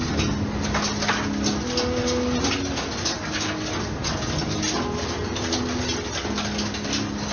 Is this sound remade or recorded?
recorded